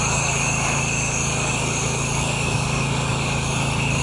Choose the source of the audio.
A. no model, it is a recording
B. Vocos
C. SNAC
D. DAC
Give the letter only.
D